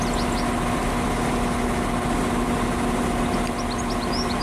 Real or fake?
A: real